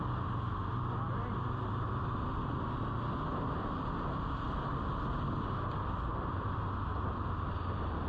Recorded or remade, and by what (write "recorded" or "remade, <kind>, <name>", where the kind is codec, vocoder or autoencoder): recorded